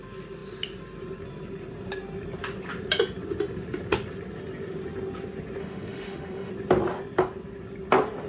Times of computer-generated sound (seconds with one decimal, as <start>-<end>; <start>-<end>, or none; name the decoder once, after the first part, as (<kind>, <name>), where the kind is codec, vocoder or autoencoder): 5.6-6.5 (autoencoder, DAC-VAE)